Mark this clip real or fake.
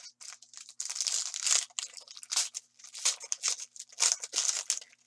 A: real